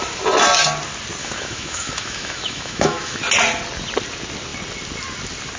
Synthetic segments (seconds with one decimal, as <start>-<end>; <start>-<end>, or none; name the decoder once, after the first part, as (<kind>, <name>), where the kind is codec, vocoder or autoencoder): 1.2-3.2 (autoencoder, DAC-VAE)